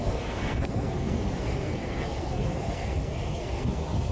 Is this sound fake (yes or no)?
yes